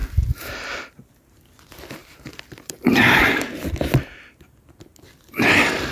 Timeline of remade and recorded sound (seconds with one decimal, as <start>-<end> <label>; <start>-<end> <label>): 0.0-1.1 remade; 1.1-2.0 recorded; 2.0-3.4 remade; 3.4-5.9 recorded